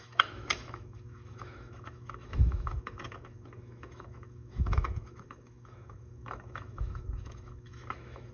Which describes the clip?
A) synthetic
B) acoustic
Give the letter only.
A